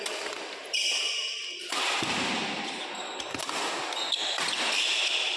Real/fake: real